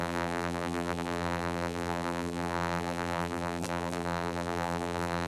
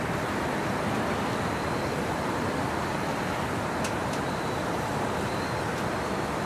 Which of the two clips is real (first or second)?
second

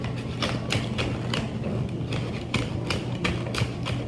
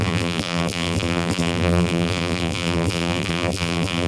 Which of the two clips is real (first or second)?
first